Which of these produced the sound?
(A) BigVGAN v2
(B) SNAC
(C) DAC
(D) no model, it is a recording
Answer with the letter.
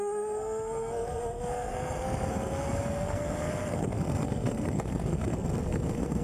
B